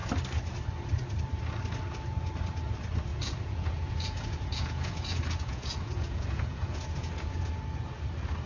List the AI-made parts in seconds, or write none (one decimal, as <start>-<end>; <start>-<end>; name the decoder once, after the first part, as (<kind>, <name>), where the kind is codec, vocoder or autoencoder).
3.1-7.6 (vocoder, Vocos)